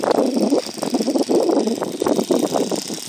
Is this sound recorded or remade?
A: recorded